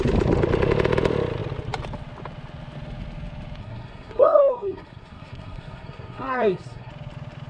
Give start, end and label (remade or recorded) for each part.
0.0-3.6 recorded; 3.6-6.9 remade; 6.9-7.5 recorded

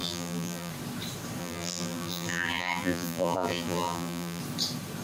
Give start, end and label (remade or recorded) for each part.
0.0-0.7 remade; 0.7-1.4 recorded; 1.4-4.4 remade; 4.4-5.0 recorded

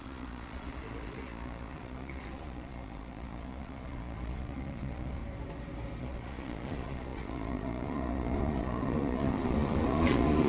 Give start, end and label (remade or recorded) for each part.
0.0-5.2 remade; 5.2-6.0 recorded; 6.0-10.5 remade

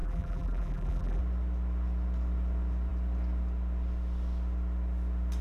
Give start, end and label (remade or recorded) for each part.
0.0-1.2 remade; 1.2-5.4 recorded

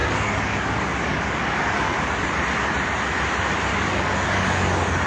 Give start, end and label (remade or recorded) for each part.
0.0-2.1 remade; 2.1-3.7 recorded; 3.7-5.1 remade

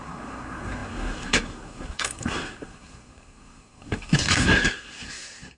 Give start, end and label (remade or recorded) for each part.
0.0-5.6 remade

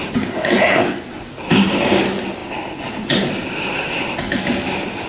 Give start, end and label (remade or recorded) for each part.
0.0-1.5 recorded; 1.5-2.0 remade; 2.0-5.1 recorded